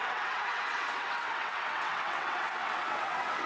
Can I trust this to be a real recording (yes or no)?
no